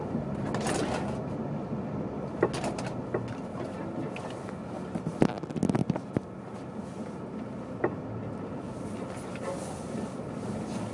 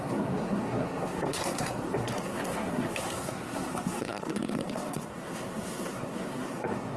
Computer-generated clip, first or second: second